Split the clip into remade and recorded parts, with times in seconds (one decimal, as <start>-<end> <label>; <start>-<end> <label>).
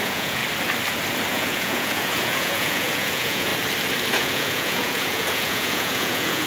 0.0-0.4 remade; 0.4-1.3 recorded; 1.3-3.5 remade; 3.5-4.1 recorded; 4.1-6.5 remade